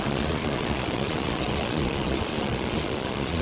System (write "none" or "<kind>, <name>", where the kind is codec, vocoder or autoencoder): vocoder, Vocos